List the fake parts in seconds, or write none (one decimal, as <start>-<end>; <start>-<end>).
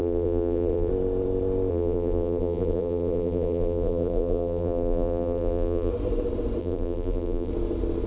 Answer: 0.0-0.9; 1.7-5.9; 6.6-7.5